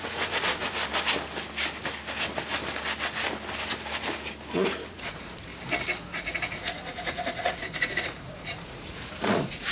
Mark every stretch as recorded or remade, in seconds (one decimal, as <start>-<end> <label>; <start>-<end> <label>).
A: 0.0-0.8 remade; 0.8-4.9 recorded; 4.9-5.5 remade; 5.5-6.0 recorded; 6.0-9.7 remade